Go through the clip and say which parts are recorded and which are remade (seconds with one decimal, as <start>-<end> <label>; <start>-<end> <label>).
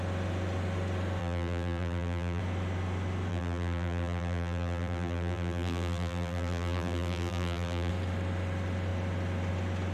0.0-1.2 recorded; 1.2-2.4 remade; 2.4-3.3 recorded; 3.3-7.9 remade; 7.9-9.9 recorded